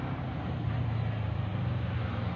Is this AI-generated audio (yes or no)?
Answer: no